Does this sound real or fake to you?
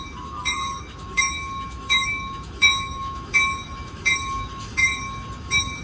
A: fake